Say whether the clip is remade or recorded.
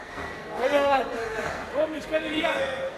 remade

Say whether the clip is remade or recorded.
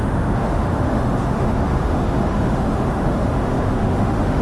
remade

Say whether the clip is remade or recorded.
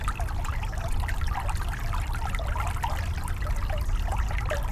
recorded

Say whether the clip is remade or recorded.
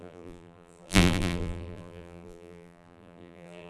remade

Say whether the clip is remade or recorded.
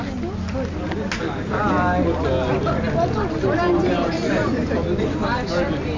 recorded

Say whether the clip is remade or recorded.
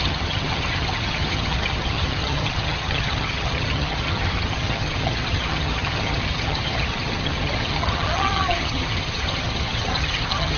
remade